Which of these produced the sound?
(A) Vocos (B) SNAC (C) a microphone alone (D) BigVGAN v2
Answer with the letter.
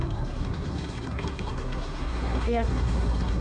B